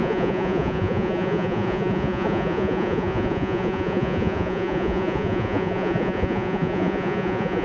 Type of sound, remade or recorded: remade